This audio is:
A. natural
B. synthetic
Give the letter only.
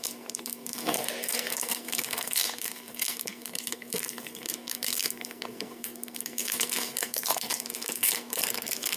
B